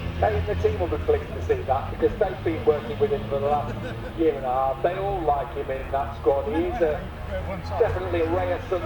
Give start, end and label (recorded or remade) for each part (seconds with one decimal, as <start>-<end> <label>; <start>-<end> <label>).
0.0-8.9 recorded